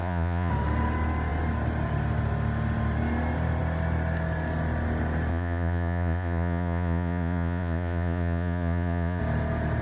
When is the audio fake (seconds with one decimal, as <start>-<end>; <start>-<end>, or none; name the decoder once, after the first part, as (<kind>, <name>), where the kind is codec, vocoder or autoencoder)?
0.0-0.5 (vocoder, Vocos); 5.3-9.2